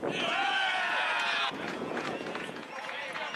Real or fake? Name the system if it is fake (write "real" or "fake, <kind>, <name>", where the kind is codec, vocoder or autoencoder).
fake, vocoder, Vocos